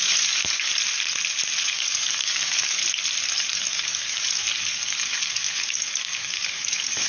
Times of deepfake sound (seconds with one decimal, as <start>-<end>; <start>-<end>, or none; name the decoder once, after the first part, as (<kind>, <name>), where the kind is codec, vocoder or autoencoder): 0.0-0.7 (codec, DAC); 1.6-2.8; 3.5-7.1